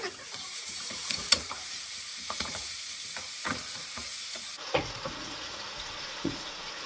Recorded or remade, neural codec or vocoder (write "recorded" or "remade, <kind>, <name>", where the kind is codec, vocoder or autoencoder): remade, vocoder, Vocos